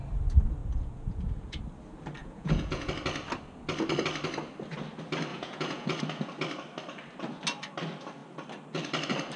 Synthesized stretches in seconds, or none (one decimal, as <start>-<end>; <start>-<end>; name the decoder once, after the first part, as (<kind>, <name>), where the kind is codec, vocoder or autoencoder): 0.6-1.6 (vocoder, Vocos); 2.2-2.9; 5.3-6.0